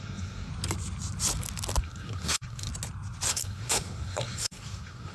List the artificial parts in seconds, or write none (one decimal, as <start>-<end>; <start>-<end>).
0.0-0.5; 1.8-2.7; 3.3-5.1